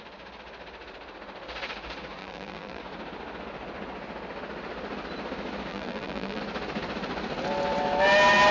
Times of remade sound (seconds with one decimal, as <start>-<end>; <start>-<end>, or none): 2.2-2.8; 5.7-6.4